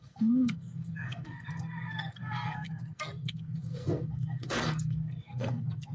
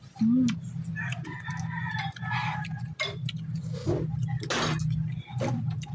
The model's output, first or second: first